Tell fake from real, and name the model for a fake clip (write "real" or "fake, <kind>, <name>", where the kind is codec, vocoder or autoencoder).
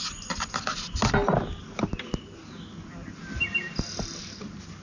real